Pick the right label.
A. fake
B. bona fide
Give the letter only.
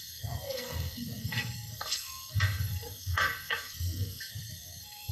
A